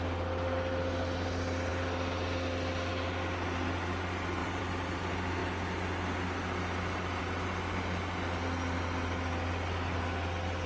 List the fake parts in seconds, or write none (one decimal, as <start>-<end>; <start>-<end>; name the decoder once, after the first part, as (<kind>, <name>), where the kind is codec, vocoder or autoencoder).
4.4-5.0 (vocoder, BigVGAN v2)